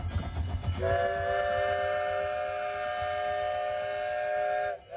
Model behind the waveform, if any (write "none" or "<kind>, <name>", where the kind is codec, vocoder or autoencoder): none